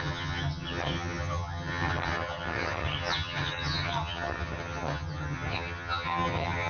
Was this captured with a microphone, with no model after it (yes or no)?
no